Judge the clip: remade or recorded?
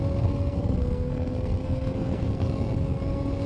remade